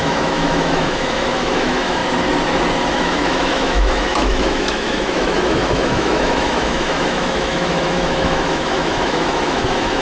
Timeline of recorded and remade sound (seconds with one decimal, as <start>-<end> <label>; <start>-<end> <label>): 0.0-2.0 remade; 2.0-2.9 recorded; 2.9-10.0 remade